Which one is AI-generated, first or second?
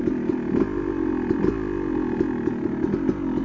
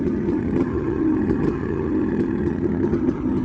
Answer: second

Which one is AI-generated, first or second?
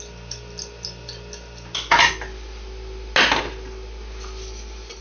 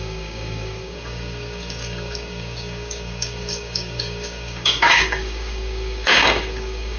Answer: second